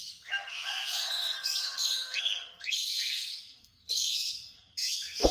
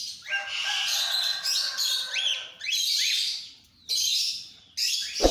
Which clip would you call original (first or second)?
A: second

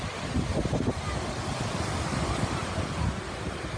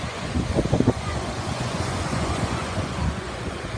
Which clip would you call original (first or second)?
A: first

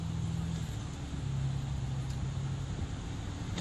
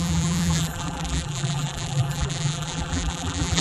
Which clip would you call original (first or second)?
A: first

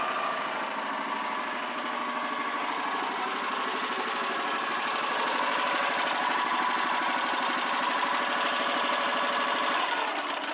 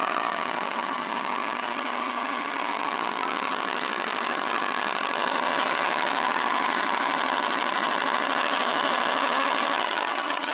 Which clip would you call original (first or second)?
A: first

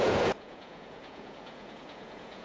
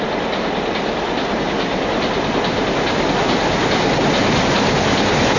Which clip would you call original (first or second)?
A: second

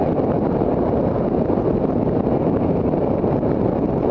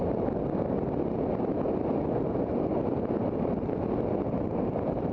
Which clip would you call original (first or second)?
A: second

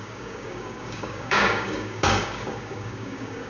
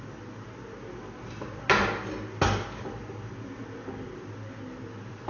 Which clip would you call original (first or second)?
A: second